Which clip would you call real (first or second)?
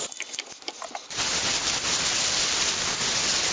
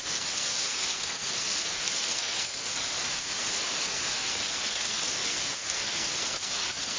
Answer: first